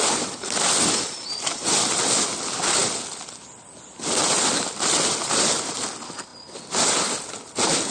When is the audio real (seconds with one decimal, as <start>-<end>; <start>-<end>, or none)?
0.0-7.9